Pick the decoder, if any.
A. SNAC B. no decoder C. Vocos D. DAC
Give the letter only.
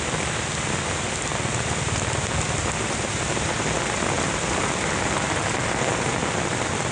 B